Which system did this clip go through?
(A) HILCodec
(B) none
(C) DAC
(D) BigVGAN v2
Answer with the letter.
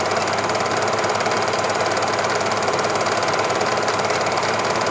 D